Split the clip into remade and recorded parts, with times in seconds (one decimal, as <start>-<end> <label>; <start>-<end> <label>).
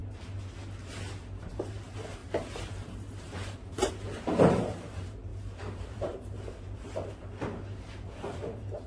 0.0-1.4 recorded; 1.4-8.9 remade